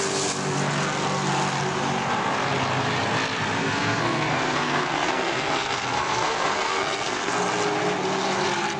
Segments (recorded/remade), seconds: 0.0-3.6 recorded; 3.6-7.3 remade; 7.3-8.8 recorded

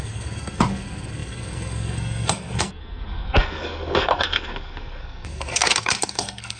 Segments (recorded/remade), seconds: 0.0-6.6 remade